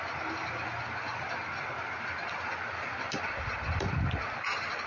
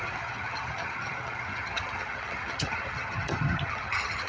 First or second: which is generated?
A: second